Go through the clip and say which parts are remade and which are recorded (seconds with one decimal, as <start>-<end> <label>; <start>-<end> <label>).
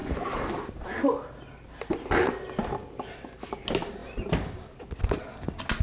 0.0-5.8 recorded